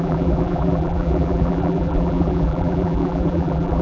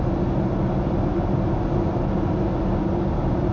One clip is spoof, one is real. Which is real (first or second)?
second